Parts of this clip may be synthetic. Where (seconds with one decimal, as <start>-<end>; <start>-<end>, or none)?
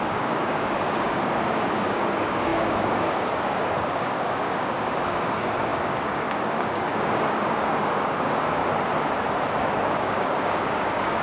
0.0-8.6; 9.6-11.2